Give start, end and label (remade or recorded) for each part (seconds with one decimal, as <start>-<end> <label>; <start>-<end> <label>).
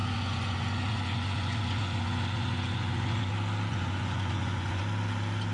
0.0-3.3 remade; 3.3-3.7 recorded; 3.7-4.8 remade; 4.8-5.5 recorded